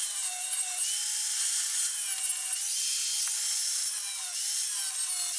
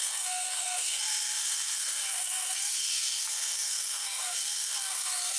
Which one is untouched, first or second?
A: first